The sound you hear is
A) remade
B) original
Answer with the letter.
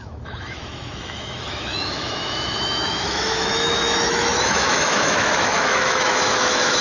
A